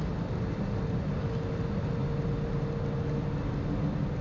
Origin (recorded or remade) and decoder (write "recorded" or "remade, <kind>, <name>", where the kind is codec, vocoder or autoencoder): recorded